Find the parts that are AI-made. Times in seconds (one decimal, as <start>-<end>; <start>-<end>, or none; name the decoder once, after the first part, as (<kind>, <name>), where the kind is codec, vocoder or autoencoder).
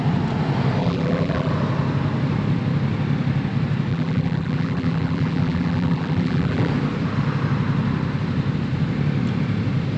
0.8-1.5 (vocoder, BigVGAN v2); 3.9-6.7